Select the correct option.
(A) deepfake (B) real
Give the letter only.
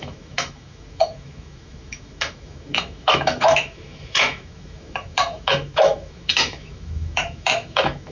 A